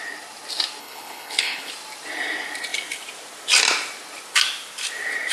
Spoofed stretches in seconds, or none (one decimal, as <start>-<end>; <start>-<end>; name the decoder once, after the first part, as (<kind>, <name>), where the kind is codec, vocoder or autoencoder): 0.8-1.7 (codec, HILCodec)